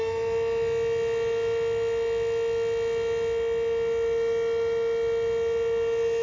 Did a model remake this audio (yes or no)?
no